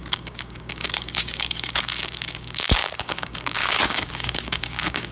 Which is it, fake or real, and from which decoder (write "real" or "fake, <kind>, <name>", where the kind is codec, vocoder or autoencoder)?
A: fake, codec, DAC